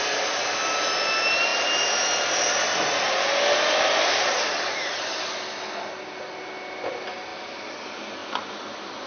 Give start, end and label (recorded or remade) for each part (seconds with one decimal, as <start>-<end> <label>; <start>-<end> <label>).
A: 0.0-9.1 recorded